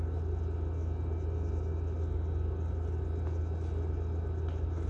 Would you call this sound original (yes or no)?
yes